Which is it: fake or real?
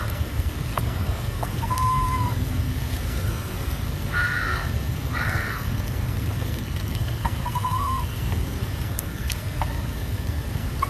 fake